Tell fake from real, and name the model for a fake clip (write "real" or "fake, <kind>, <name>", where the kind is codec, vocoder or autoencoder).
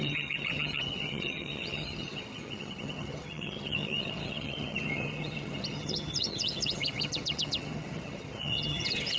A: fake, vocoder, HiFi-GAN